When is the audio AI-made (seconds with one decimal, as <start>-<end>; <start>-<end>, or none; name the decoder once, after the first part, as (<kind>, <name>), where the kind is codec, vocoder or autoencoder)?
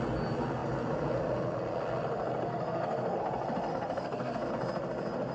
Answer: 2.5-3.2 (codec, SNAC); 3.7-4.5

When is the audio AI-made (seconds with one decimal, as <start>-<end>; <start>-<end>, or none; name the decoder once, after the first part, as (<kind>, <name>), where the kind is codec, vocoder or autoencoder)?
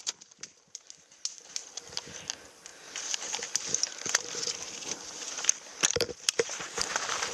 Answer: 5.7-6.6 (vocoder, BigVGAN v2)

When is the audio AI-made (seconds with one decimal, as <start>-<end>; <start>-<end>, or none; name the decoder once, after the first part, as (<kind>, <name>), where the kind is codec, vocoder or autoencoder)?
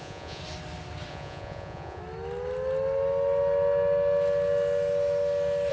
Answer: 0.0-0.4 (vocoder, Vocos); 1.1-2.0